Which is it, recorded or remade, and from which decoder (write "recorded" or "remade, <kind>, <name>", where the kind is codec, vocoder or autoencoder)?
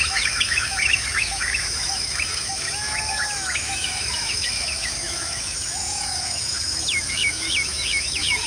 remade, autoencoder, DAC-VAE